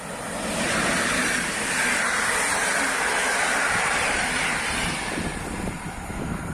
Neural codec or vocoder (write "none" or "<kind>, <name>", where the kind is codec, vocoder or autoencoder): none